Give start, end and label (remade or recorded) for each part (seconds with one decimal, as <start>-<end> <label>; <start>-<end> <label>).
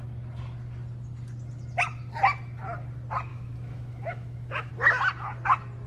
0.0-3.3 recorded; 3.3-4.7 remade; 4.7-5.9 recorded